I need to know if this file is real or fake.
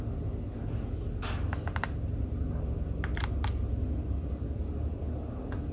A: real